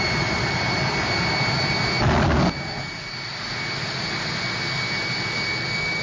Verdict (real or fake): real